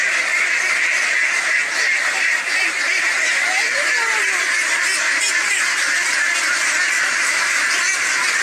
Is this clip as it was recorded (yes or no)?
yes